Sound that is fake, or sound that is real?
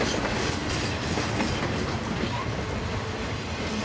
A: real